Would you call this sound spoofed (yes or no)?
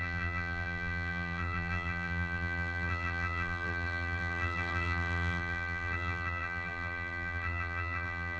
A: yes